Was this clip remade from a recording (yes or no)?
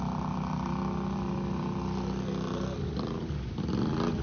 no